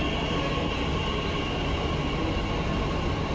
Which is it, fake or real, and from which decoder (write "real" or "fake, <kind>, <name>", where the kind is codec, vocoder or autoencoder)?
real